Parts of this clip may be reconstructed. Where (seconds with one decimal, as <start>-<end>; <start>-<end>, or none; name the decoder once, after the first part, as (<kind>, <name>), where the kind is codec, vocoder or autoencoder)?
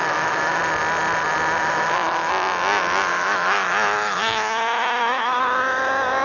0.0-0.6 (autoencoder, DAC-VAE); 1.6-2.3; 3.1-5.4